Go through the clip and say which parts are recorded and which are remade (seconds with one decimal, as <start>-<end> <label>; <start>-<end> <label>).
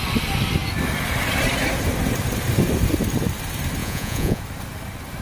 0.0-3.8 recorded; 3.8-4.4 remade; 4.4-5.2 recorded